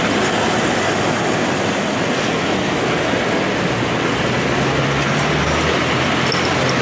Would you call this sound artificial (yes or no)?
no